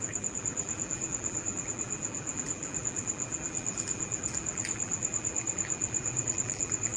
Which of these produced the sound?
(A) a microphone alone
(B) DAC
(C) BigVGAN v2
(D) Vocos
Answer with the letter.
C